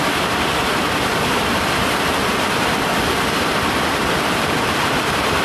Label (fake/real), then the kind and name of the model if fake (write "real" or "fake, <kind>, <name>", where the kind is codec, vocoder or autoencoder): fake, vocoder, BigVGAN v2